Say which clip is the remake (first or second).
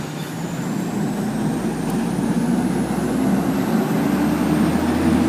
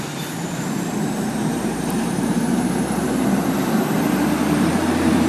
second